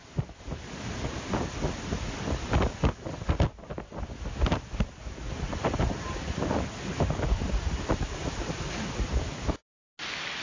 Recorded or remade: recorded